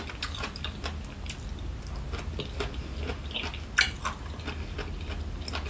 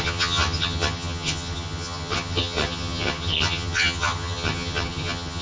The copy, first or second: second